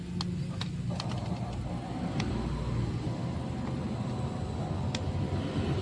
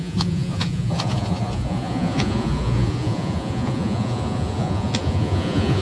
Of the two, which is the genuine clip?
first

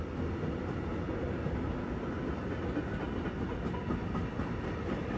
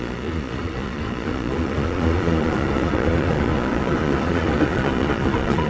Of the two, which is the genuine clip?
first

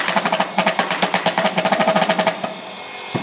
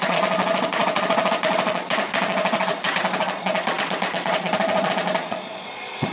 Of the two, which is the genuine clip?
first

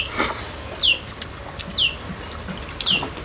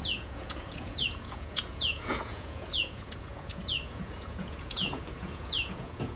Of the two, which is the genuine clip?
first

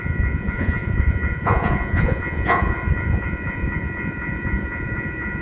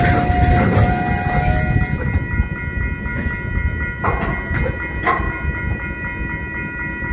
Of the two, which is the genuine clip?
second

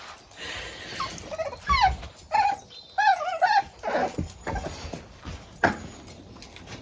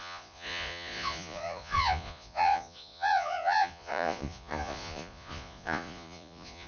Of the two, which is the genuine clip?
first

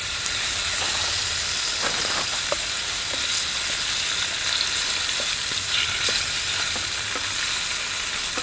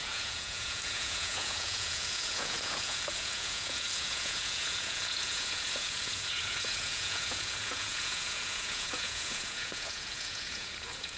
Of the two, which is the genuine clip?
first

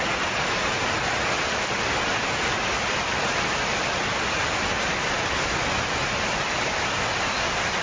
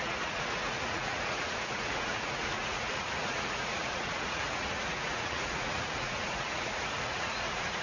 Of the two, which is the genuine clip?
first